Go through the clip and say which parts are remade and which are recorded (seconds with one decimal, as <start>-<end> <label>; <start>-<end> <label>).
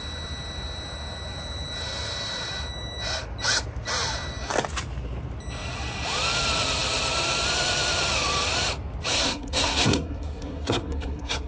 0.0-9.1 recorded; 9.1-11.5 remade